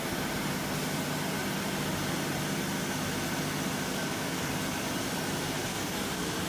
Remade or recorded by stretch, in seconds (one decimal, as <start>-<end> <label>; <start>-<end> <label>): 0.0-3.9 recorded; 3.9-4.5 remade; 4.5-5.6 recorded; 5.6-6.5 remade